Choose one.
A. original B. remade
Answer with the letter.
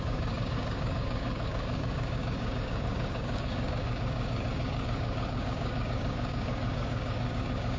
B